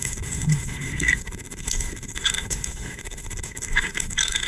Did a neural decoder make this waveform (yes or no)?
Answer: yes